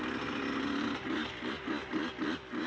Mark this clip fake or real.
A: real